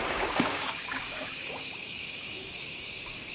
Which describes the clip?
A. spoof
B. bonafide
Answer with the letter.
A